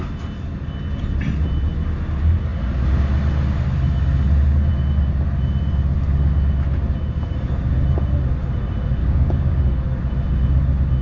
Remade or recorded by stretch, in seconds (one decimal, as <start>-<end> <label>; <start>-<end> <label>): 0.0-9.0 recorded; 9.0-9.6 remade; 9.6-11.0 recorded